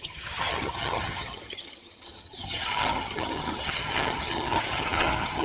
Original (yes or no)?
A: no